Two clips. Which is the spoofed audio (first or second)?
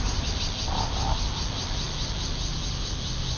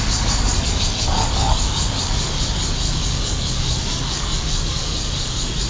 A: second